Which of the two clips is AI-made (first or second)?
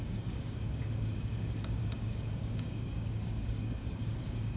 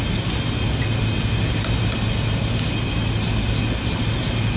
first